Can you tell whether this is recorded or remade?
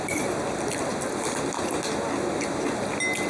recorded